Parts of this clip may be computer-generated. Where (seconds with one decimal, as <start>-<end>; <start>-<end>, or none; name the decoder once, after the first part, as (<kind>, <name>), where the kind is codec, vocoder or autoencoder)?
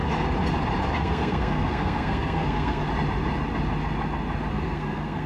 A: 0.9-2.9 (codec, SNAC); 4.5-5.3